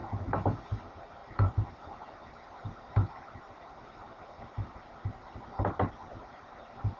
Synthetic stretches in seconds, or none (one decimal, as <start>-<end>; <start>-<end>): 1.2-2.0; 4.0-5.3